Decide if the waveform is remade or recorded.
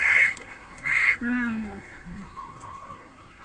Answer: remade